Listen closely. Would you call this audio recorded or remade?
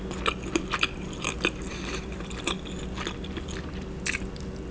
recorded